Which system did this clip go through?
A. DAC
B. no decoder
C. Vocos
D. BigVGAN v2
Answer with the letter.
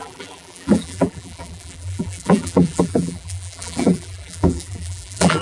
D